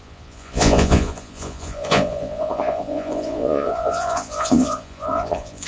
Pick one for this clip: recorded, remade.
remade